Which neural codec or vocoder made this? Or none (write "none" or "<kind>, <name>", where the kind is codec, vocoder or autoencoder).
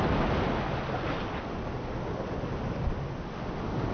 none